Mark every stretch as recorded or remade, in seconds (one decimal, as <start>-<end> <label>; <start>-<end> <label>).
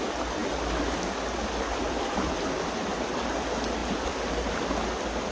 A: 0.0-5.3 recorded